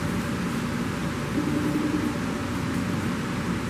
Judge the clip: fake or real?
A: real